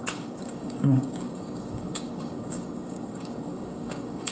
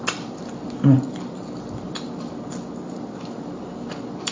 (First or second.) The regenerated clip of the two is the first